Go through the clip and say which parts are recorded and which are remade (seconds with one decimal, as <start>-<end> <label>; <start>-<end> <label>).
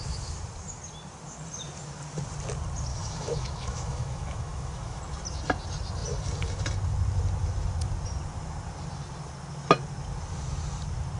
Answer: 0.0-2.9 recorded; 2.9-5.0 remade; 5.0-11.2 recorded